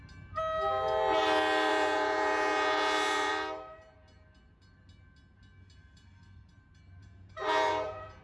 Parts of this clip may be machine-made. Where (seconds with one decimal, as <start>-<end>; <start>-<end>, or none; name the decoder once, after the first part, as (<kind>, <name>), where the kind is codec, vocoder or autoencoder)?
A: 1.7-3.3 (vocoder, Vocos); 7.0-8.2